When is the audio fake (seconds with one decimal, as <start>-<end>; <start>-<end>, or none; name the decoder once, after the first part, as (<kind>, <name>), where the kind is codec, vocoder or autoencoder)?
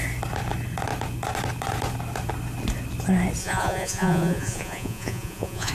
3.4-5.7 (vocoder, Vocos)